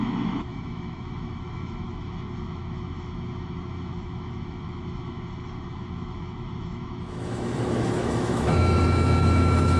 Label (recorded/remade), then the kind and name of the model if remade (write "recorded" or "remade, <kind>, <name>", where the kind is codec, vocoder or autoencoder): remade, autoencoder, DAC-VAE